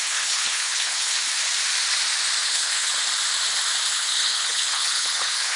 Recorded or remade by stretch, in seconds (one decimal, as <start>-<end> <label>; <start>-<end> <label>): 0.0-1.2 remade; 1.2-2.4 recorded; 2.4-2.9 remade; 2.9-3.9 recorded; 3.9-5.6 remade